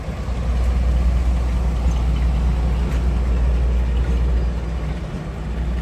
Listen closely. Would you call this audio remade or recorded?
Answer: recorded